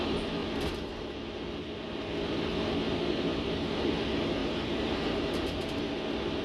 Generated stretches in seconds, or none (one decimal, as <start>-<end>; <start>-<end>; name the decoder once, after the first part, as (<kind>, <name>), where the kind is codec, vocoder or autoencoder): 0.4-1.1 (vocoder, BigVGAN v2); 3.3-3.9; 4.4-5.6